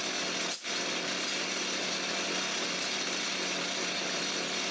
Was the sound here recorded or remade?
recorded